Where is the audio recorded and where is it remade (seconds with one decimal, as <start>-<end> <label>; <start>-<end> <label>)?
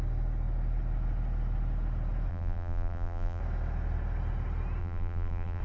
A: 0.0-2.3 recorded; 2.3-3.4 remade; 3.4-4.8 recorded; 4.8-5.6 remade